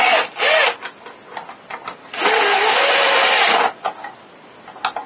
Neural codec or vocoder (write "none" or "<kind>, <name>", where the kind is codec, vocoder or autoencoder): none